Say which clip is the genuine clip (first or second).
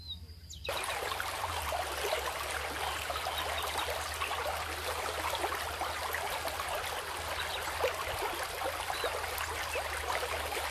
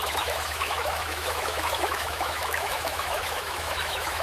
first